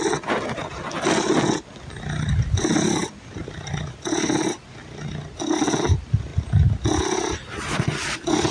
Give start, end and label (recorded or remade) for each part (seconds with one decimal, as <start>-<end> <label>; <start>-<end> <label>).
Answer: 0.0-8.5 recorded